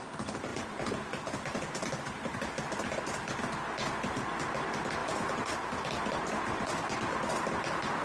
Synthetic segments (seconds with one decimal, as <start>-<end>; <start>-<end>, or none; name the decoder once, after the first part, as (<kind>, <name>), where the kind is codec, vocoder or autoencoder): 0.5-3.4 (vocoder, BigVGAN v2); 5.0-7.3